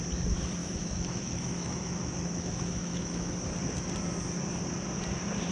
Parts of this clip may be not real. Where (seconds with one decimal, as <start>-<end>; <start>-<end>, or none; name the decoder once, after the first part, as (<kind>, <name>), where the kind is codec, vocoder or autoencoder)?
0.6-3.3 (autoencoder, DAC-VAE)